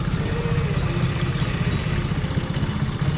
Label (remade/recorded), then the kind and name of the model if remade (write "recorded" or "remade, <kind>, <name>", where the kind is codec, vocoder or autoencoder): recorded